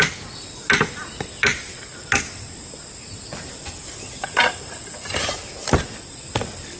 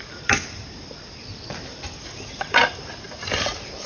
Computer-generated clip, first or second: second